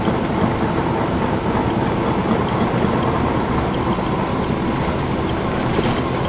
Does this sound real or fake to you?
real